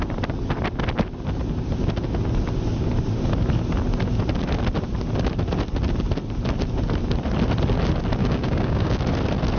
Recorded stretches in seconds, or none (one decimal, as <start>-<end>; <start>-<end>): 0.0-8.2; 9.0-9.6